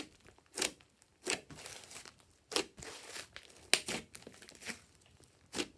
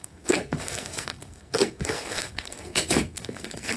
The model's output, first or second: second